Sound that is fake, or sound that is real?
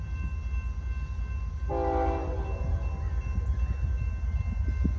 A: real